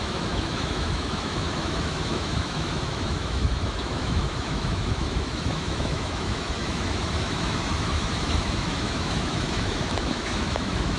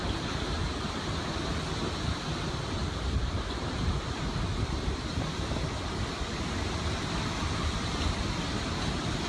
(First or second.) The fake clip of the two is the first